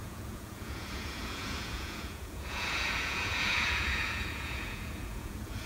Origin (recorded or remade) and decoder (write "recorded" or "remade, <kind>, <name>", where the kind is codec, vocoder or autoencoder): remade, vocoder, Vocos